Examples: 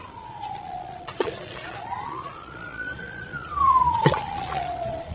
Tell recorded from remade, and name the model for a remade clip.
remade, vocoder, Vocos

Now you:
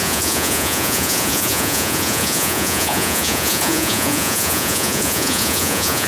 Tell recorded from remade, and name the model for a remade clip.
remade, vocoder, Vocos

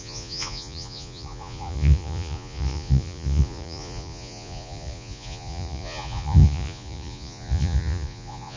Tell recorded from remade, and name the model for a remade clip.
remade, vocoder, Vocos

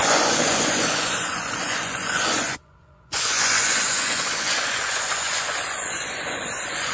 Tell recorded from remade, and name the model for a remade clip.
remade, vocoder, Vocos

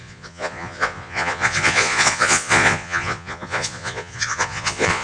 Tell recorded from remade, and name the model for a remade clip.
remade, vocoder, Vocos